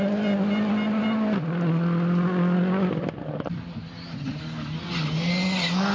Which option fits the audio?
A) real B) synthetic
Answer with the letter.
A